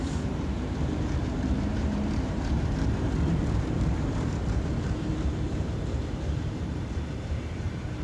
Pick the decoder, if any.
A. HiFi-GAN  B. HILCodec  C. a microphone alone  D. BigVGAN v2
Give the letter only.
D